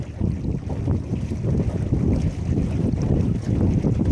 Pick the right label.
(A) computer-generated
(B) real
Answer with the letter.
B